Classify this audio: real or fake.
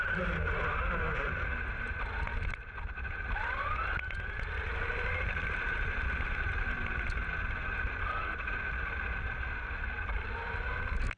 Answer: real